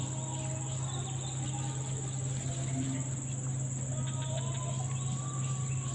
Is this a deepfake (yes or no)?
no